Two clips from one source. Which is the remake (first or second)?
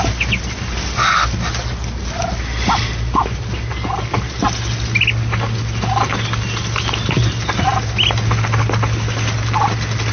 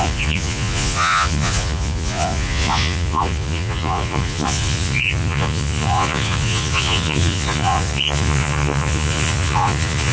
second